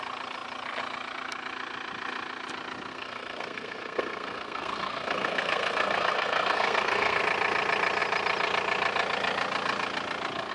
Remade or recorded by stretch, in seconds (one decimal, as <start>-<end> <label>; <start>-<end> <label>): 0.0-2.9 recorded; 2.9-7.2 remade; 7.2-10.5 recorded